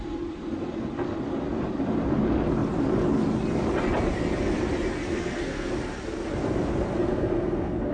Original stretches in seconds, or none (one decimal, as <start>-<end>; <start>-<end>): 0.0-5.1; 5.7-7.0